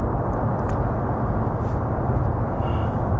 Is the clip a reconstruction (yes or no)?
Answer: no